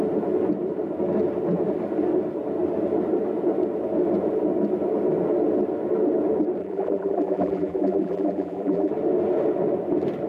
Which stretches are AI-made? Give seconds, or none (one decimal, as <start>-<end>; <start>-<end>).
6.6-8.9